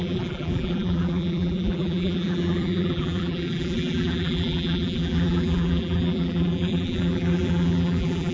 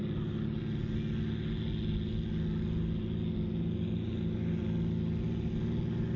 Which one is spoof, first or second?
first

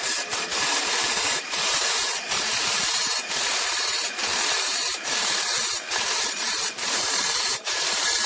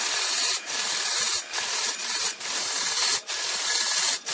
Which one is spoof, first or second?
first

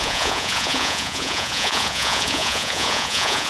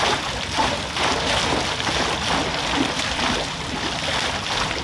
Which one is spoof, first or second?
first